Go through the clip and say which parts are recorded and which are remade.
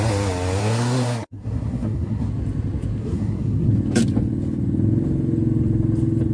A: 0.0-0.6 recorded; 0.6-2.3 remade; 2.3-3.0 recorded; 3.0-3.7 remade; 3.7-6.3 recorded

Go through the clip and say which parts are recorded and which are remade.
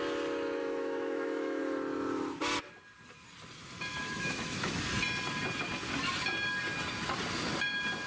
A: 0.0-0.6 recorded; 0.6-1.6 remade; 1.6-3.9 recorded; 3.9-4.8 remade; 4.8-8.1 recorded